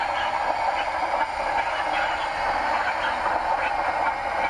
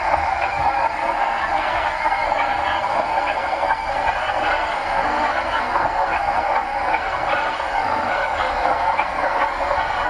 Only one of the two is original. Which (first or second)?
first